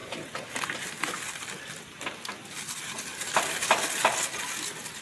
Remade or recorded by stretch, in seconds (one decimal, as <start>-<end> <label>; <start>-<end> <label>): 0.0-5.0 recorded